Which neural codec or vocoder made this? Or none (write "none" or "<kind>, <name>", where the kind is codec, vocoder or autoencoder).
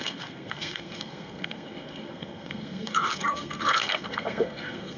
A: codec, SNAC